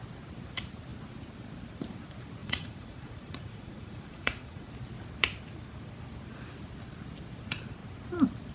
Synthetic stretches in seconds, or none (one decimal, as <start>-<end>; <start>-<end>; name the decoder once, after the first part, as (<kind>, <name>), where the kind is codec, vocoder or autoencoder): 2.4-4.7 (vocoder, Vocos)